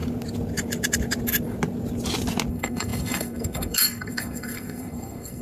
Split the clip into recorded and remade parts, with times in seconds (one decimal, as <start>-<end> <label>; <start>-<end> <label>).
0.0-2.5 recorded; 2.5-5.4 remade

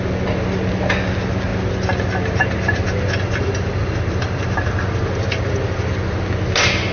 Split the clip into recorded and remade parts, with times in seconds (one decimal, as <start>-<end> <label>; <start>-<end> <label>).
0.0-6.9 recorded

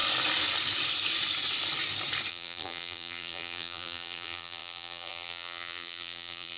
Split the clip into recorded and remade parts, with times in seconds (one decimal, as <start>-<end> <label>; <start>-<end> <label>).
0.0-2.3 recorded; 2.3-6.6 remade

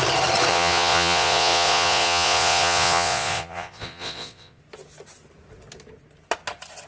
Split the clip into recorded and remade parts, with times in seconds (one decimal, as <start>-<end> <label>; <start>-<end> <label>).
0.0-0.5 recorded; 0.5-4.6 remade; 4.6-6.9 recorded

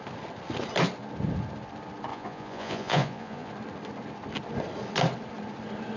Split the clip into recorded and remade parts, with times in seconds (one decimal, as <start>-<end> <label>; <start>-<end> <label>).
0.0-2.1 recorded; 2.1-3.5 remade; 3.5-6.0 recorded

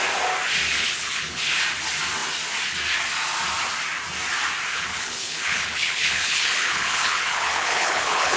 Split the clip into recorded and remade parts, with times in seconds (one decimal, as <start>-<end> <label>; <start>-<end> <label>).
0.0-0.7 recorded; 0.7-1.6 remade; 1.6-4.7 recorded; 4.7-8.4 remade

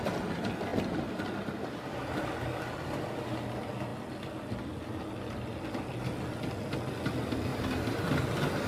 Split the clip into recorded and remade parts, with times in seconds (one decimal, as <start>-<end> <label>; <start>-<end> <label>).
0.0-7.5 recorded; 7.5-8.1 remade; 8.1-8.7 recorded

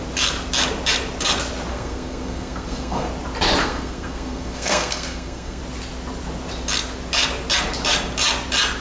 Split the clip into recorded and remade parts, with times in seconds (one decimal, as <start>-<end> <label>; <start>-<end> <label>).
0.0-1.7 recorded; 1.7-3.1 remade; 3.1-3.6 recorded; 3.6-5.6 remade; 5.6-8.8 recorded